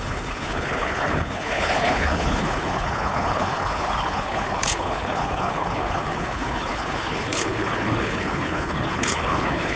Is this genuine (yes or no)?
no